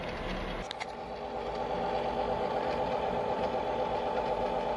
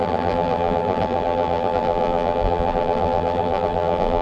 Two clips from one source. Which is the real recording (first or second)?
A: first